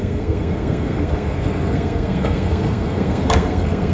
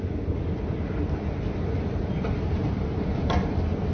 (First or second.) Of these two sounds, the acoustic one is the second